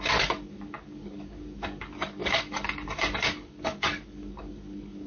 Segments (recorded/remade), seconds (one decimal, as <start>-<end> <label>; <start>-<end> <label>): 0.0-5.1 remade